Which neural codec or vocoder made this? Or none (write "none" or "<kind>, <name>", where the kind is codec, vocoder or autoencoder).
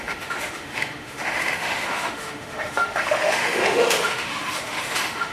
autoencoder, DAC-VAE